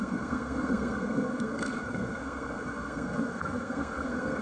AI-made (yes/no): yes